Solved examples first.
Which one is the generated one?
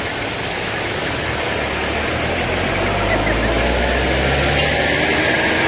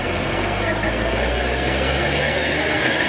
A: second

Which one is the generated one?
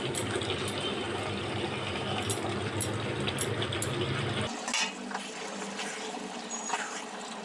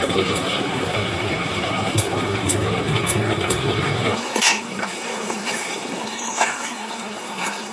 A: second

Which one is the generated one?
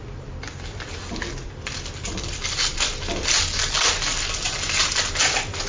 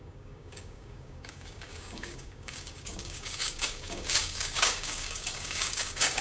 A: second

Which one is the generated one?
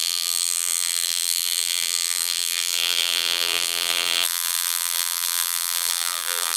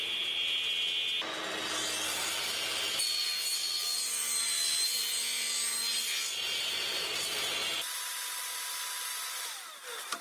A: first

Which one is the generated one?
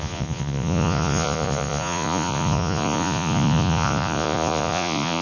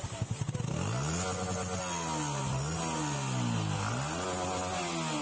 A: first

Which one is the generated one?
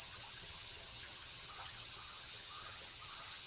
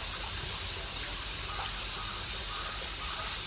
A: first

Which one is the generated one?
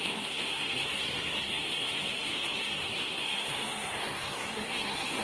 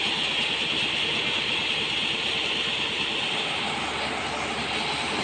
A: first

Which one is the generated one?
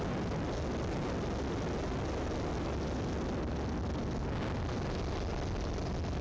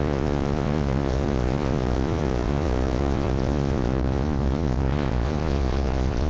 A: second